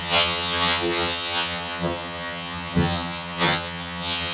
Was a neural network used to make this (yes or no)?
yes